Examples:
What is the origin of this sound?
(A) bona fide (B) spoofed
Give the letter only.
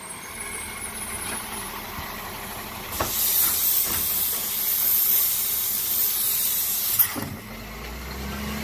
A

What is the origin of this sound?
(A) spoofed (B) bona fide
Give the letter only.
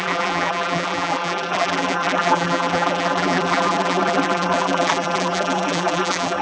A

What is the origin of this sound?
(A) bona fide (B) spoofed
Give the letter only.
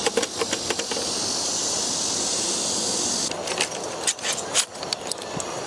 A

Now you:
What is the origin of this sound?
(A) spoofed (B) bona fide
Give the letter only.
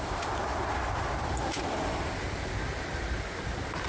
B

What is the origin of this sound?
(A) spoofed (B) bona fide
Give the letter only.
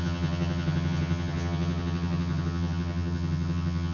A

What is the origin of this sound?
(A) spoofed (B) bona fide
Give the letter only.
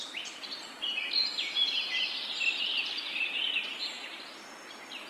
B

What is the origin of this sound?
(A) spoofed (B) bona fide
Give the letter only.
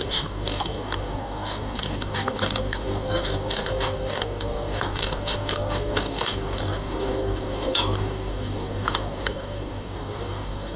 A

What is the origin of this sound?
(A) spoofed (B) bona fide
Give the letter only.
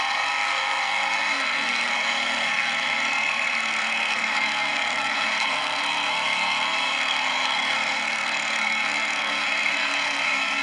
A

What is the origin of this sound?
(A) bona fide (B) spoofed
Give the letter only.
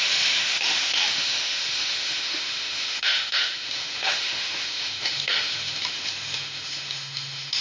B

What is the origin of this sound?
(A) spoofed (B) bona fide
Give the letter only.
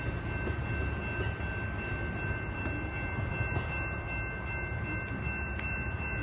B